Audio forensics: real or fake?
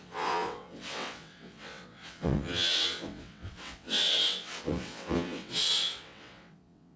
fake